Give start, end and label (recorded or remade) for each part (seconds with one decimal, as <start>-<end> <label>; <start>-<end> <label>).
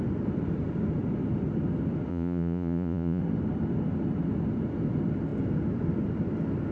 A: 0.0-2.1 recorded; 2.1-3.2 remade; 3.2-6.7 recorded